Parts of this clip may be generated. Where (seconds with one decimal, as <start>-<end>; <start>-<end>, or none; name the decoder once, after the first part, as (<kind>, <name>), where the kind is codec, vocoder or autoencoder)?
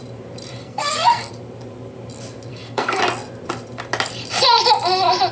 0.6-1.3 (codec, SNAC); 2.5-3.0